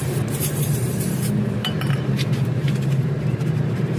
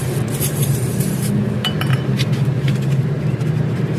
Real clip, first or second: second